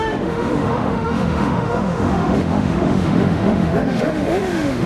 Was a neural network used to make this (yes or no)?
yes